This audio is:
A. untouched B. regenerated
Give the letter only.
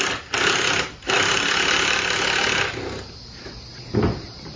A